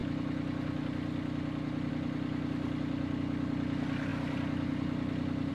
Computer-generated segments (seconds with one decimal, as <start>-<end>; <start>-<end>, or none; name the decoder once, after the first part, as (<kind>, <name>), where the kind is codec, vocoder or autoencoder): none